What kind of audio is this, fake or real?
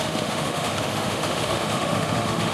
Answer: fake